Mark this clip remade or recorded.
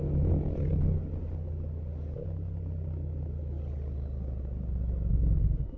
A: recorded